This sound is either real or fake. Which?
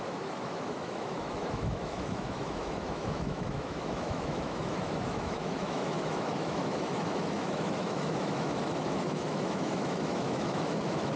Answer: fake